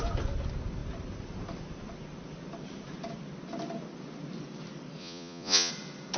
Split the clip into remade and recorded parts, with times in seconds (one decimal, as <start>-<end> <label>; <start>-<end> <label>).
0.0-5.0 recorded; 5.0-5.7 remade; 5.7-6.2 recorded